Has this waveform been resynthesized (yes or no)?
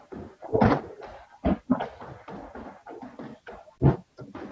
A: no